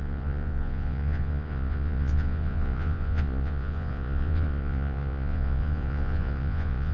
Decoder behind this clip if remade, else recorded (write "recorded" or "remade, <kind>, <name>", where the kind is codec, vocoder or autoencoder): remade, vocoder, Vocos